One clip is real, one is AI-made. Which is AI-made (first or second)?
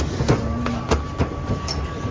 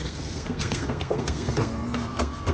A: second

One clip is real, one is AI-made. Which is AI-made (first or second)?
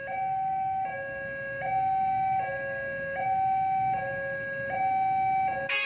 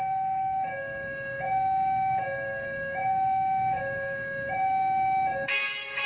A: second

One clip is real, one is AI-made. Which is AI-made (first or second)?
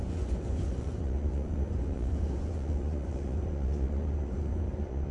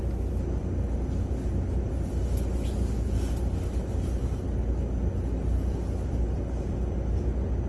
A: first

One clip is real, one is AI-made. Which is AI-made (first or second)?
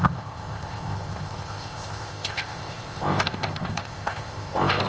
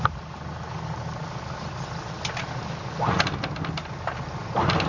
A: first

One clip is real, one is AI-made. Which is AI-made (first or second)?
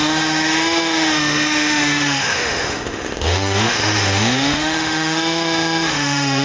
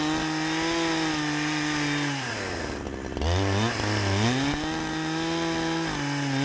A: first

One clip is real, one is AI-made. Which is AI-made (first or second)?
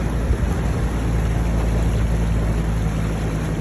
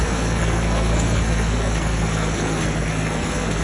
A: second